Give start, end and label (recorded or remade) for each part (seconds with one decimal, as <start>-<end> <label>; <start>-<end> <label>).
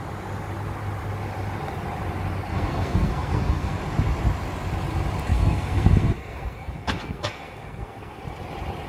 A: 0.0-2.5 recorded; 2.5-3.8 remade; 3.8-5.3 recorded; 5.3-8.2 remade; 8.2-8.9 recorded